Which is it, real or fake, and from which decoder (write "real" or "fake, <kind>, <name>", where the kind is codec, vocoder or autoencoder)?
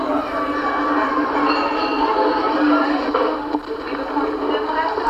real